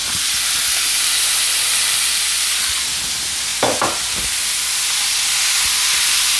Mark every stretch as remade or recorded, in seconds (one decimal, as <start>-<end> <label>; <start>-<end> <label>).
0.0-6.4 recorded